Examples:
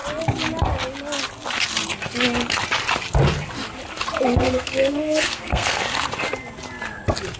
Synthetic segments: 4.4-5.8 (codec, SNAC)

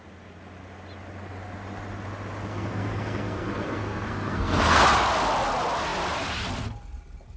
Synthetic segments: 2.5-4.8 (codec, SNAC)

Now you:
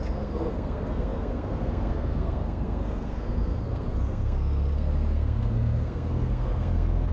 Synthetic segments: 0.0-7.1 (codec, SNAC)

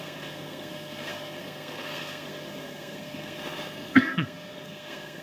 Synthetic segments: 0.0-5.2 (codec, SNAC)

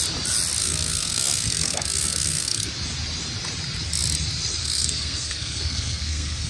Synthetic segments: 0.6-2.7 (codec, SNAC); 4.6-6.5

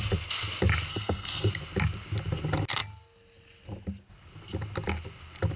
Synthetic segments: 0.9-1.5 (codec, SNAC)

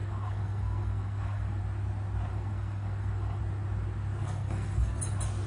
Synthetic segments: 0.0-1.6 (codec, SNAC); 2.3-3.4; 4.2-5.0

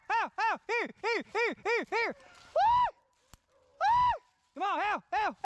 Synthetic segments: none